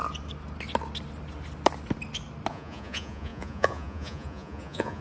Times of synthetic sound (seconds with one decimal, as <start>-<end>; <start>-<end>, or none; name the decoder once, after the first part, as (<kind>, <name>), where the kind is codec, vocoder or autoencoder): 2.5-5.0 (vocoder, Vocos)